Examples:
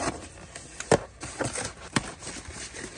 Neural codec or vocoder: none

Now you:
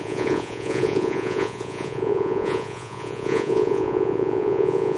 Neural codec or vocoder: vocoder, Vocos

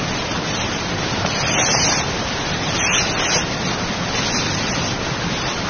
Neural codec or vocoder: none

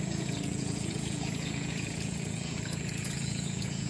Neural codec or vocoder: vocoder, Vocos